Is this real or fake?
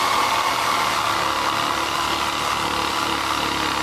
real